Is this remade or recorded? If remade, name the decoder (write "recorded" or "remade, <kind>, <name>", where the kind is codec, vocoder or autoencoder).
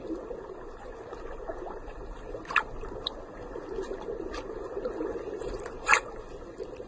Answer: recorded